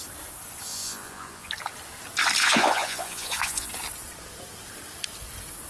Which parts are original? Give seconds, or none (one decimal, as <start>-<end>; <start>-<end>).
0.0-0.7; 1.5-2.4; 3.7-5.7